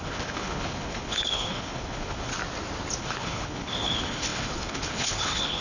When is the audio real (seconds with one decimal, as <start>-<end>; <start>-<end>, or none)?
2.3-3.0